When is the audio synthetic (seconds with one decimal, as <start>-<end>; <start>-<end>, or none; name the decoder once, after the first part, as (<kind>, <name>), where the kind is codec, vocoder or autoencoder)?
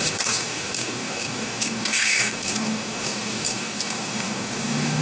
0.0-5.0 (codec, DAC)